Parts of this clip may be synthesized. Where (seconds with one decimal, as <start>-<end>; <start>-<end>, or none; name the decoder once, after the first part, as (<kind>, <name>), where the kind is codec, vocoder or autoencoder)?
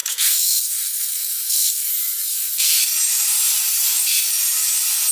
0.0-1.9 (codec, SNAC); 2.3-2.8